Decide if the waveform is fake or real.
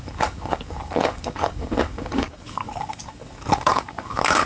fake